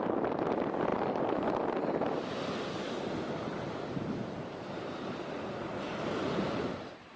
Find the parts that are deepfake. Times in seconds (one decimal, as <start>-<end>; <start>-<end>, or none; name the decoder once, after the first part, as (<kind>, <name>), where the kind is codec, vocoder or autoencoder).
none